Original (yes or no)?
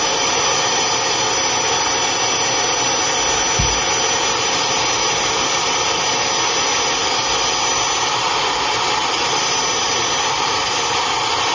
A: yes